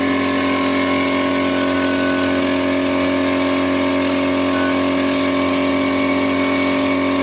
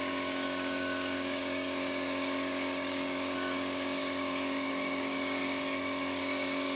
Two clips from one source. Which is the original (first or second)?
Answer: first